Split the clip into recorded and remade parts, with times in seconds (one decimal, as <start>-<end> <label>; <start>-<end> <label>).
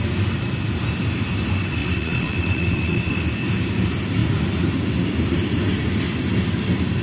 0.0-1.8 recorded; 1.8-3.1 remade; 3.1-7.0 recorded